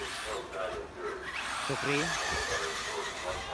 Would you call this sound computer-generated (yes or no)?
yes